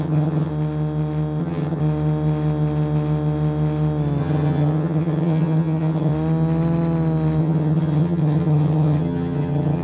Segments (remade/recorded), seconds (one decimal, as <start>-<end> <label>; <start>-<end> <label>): 0.0-0.5 remade; 0.5-1.4 recorded; 1.4-1.8 remade; 1.8-4.2 recorded; 4.2-6.1 remade; 6.1-7.4 recorded; 7.4-9.8 remade